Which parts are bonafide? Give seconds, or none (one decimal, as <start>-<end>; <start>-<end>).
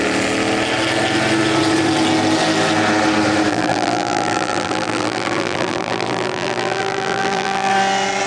0.0-3.5; 7.7-8.3